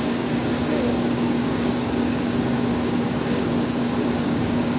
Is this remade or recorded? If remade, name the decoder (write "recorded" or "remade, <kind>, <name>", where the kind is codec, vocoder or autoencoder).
remade, codec, DAC